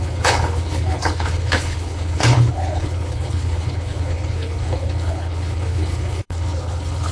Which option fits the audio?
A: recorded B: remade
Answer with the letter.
B